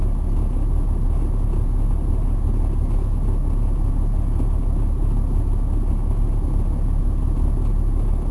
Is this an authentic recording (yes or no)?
yes